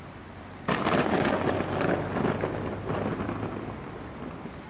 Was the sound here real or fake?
real